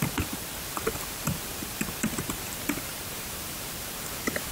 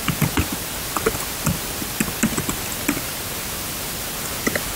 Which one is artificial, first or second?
first